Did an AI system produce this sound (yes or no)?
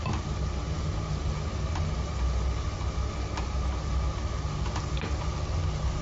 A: no